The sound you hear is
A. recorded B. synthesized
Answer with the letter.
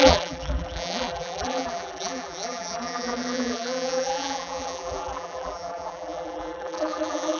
B